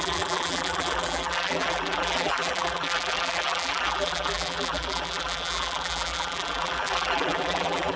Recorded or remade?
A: remade